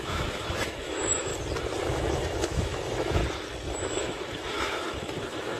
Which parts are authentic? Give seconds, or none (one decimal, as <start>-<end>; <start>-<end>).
1.3-1.8; 3.2-3.8